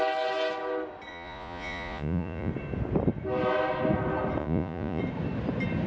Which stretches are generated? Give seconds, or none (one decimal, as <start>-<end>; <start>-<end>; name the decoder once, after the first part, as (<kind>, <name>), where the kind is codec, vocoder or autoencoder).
1.1-2.5 (vocoder, Vocos); 4.4-5.0